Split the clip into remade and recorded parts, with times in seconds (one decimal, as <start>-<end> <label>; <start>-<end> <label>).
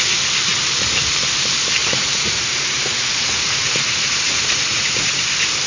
0.0-1.8 recorded; 1.8-5.2 remade; 5.2-5.7 recorded